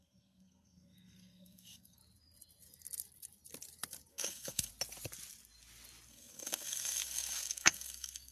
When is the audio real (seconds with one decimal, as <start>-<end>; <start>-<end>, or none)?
2.0-4.1; 4.7-6.1